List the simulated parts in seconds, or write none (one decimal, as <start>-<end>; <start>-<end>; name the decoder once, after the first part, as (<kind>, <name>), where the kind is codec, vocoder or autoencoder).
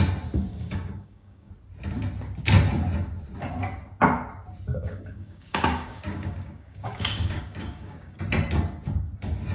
0.5-1.5 (codec, DAC); 4.7-8.2